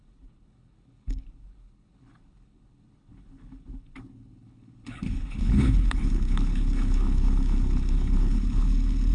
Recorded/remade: remade